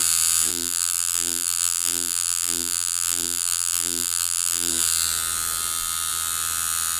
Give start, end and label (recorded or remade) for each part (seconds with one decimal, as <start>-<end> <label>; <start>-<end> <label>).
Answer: 0.0-0.5 recorded; 0.5-4.7 remade; 4.7-7.0 recorded